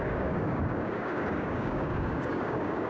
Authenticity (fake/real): fake